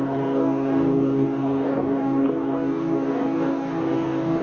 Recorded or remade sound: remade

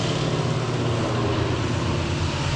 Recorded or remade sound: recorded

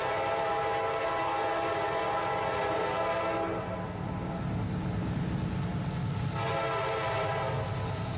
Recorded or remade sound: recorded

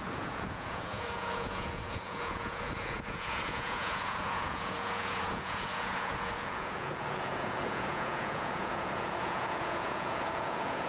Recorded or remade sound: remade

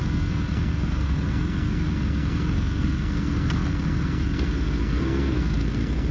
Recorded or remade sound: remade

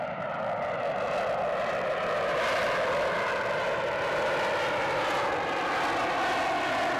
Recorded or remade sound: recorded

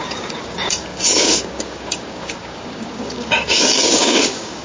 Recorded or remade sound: remade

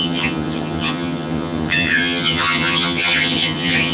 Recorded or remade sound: remade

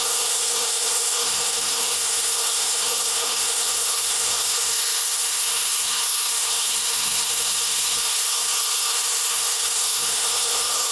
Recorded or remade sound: remade